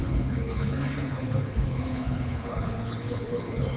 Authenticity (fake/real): fake